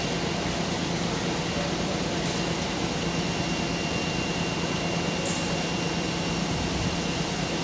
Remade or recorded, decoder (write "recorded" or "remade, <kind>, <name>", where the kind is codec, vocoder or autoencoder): recorded